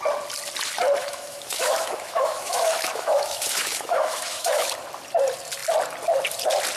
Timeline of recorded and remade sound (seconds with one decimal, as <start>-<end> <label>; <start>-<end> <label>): 0.0-1.0 recorded; 1.0-4.7 remade; 4.7-6.8 recorded